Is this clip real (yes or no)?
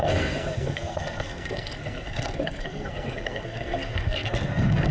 no